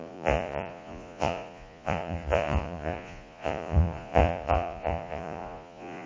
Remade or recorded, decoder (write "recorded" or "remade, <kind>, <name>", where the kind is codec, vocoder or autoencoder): remade, vocoder, Vocos